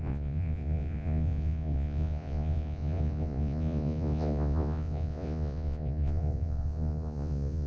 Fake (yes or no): yes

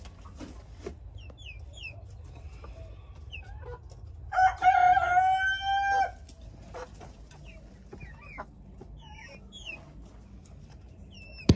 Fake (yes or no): no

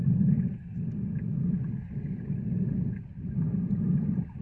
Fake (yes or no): no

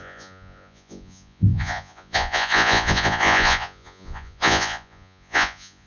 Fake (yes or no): yes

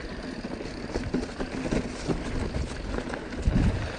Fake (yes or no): no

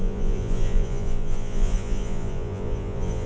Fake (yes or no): yes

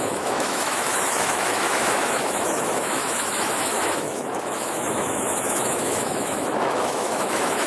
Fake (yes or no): yes